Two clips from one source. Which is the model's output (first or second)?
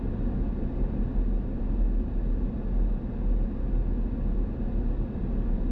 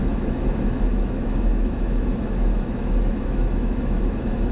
second